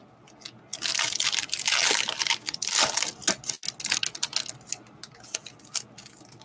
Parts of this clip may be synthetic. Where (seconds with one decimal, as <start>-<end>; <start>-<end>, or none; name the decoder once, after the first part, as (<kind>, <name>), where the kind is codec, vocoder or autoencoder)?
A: none